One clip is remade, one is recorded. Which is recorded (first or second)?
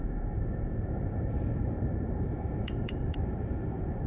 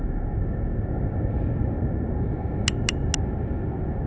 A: second